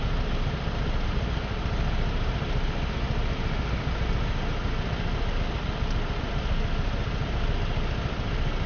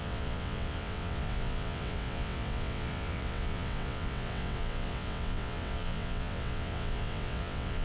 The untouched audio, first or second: first